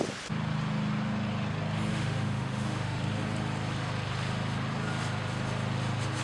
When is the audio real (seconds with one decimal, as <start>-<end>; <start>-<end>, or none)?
0.0-1.9; 3.0-6.2

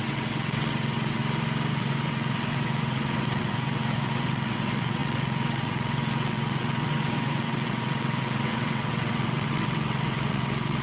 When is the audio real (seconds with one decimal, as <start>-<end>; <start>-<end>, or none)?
1.2-1.7